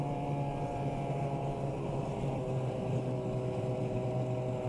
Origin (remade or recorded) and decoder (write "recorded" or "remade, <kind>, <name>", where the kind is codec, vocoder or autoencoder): recorded